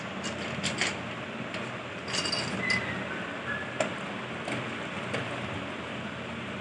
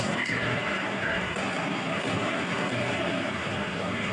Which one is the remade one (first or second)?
second